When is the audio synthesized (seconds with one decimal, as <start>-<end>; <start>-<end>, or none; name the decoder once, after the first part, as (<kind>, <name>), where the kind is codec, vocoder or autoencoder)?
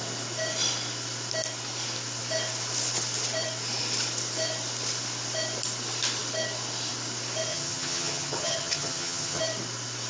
7.5-9.4 (vocoder, HiFi-GAN)